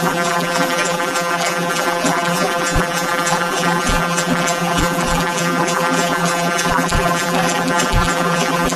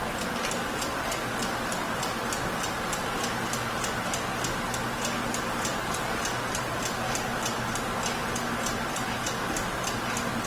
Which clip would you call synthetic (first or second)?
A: first